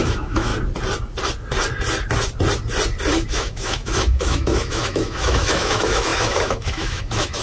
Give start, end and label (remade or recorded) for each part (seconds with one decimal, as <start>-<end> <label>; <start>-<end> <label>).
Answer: 0.0-0.5 remade; 0.5-3.3 recorded; 3.3-7.4 remade